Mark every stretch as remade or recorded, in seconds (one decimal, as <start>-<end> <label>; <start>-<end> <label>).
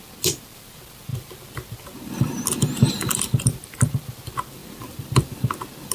0.0-5.9 recorded